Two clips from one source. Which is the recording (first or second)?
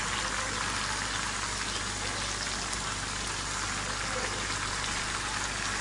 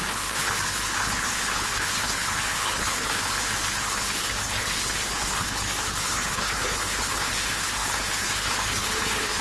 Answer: first